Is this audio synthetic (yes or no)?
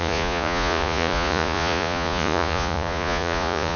yes